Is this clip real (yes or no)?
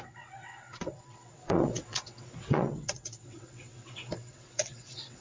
no